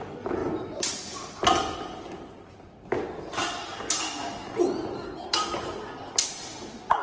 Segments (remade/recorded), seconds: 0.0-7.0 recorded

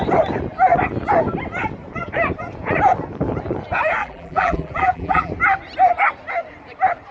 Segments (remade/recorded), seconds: 0.0-4.0 recorded; 4.0-5.3 remade; 5.3-7.1 recorded

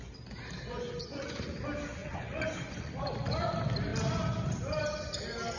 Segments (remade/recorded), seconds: 0.0-1.0 recorded; 1.0-1.6 remade; 1.6-2.0 recorded; 2.0-2.9 remade; 2.9-5.6 recorded

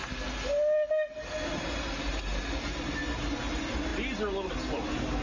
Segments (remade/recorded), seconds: 0.0-5.2 recorded